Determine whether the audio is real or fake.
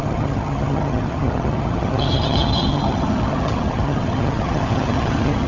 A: fake